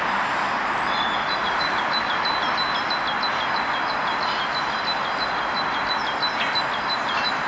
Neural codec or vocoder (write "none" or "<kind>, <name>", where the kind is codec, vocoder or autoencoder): none